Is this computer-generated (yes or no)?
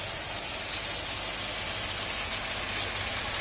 no